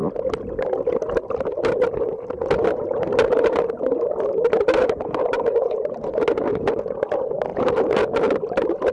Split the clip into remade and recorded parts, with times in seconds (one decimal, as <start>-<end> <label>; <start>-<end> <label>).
0.0-7.5 recorded; 7.5-8.9 remade